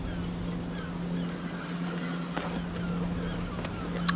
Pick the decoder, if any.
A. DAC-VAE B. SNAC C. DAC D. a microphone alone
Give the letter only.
D